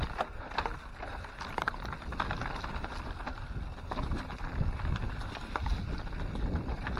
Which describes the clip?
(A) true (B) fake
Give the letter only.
A